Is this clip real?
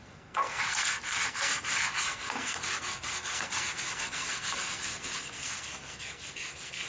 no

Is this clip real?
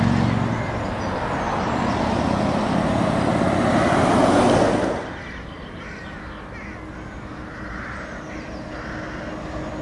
yes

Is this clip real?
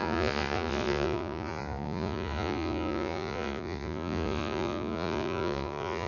no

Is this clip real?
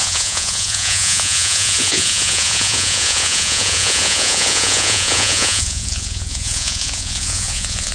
no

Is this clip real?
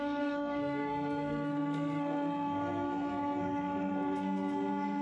no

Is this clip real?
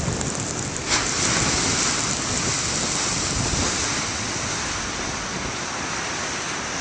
yes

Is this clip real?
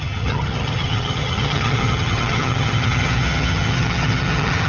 no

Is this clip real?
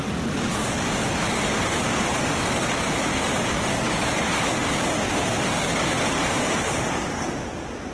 yes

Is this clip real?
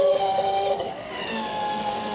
no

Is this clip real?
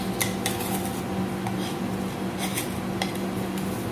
yes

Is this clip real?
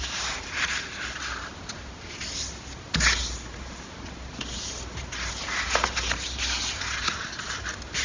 yes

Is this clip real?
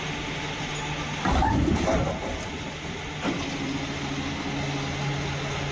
yes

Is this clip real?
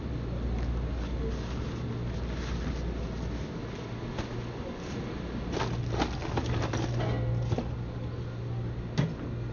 yes